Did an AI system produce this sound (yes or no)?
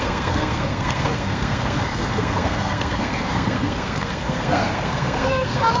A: yes